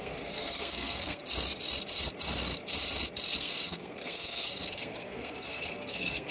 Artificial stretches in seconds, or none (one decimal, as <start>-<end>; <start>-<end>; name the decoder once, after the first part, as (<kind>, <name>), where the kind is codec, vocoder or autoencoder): 0.0-1.2 (codec, SNAC); 3.4-6.3